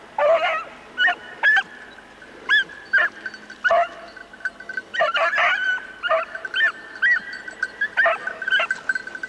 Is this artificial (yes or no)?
no